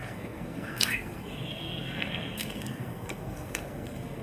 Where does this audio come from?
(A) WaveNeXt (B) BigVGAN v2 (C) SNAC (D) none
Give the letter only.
C